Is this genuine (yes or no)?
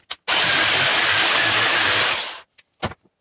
yes